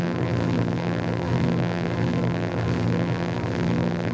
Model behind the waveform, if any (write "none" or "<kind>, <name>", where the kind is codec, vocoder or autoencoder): vocoder, BigVGAN v2